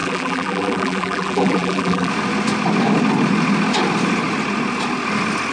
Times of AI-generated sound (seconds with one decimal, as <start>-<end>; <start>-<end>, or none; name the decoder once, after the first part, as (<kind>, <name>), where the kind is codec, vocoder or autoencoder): 0.0-2.1 (vocoder, BigVGAN v2)